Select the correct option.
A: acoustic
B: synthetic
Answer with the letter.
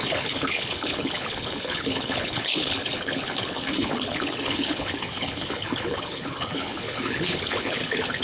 B